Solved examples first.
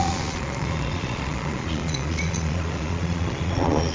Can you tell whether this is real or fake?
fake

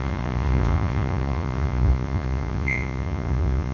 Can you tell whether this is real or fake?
fake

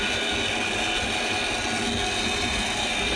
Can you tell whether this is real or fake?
real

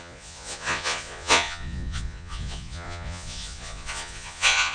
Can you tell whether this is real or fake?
fake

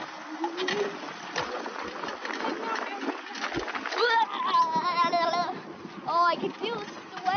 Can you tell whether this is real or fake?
real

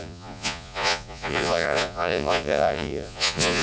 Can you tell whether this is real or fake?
fake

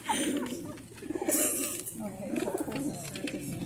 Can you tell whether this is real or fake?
real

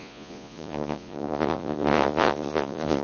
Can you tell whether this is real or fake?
fake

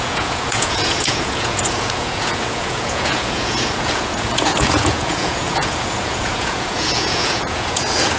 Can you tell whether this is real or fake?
fake